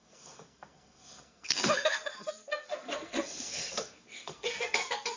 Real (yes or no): no